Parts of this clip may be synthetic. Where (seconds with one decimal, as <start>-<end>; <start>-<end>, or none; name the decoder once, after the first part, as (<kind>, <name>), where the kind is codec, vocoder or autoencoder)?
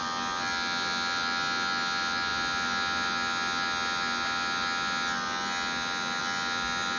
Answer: none